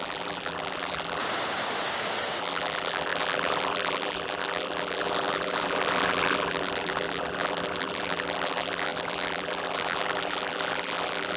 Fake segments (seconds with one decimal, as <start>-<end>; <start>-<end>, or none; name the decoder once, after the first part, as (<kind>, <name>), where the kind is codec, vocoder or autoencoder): 0.0-1.2 (vocoder, BigVGAN v2); 2.4-11.4